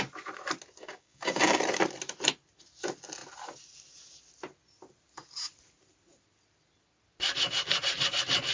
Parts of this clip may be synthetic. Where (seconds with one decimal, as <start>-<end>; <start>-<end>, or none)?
0.8-1.6